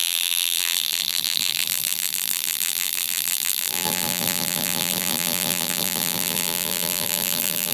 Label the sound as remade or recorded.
remade